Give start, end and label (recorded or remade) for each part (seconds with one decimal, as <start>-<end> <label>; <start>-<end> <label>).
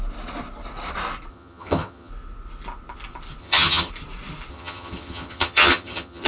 0.0-1.3 recorded; 1.3-2.1 remade; 2.1-3.4 recorded; 3.4-3.9 remade; 3.9-4.5 recorded; 4.5-6.3 remade